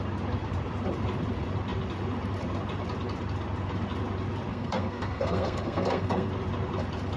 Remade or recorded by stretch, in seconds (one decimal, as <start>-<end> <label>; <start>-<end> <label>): 0.0-4.5 recorded; 4.5-6.3 remade; 6.3-7.2 recorded

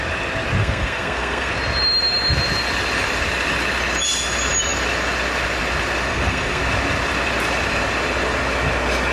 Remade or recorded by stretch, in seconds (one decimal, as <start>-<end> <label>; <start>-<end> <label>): 0.0-0.6 recorded; 0.6-1.5 remade; 1.5-6.1 recorded; 6.1-6.6 remade; 6.6-9.1 recorded

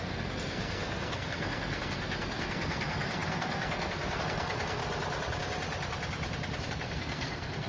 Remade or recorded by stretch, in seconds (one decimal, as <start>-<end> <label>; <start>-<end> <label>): 0.0-4.8 remade; 4.8-6.7 recorded; 6.7-7.7 remade

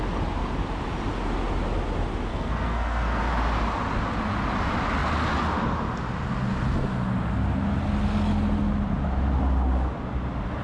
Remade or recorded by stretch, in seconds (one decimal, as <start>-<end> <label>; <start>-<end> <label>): 0.0-2.3 recorded; 2.3-3.2 remade; 3.2-10.6 recorded

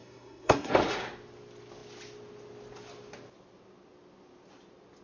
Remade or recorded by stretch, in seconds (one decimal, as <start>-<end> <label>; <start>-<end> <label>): 0.0-0.7 remade; 0.7-5.0 recorded

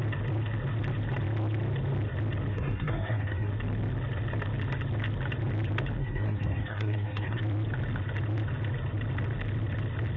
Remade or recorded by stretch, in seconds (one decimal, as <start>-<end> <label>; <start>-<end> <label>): 0.0-2.5 recorded; 2.5-3.5 remade; 3.5-6.0 recorded; 6.0-7.4 remade; 7.4-10.2 recorded

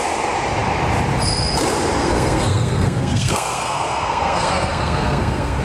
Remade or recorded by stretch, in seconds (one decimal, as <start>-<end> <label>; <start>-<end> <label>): 0.0-2.0 recorded; 2.0-5.6 remade